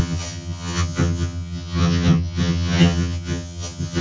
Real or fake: fake